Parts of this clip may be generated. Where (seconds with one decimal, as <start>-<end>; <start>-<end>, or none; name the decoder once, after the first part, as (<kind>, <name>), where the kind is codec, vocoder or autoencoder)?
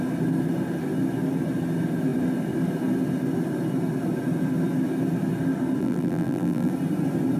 5.8-6.7 (vocoder, BigVGAN v2)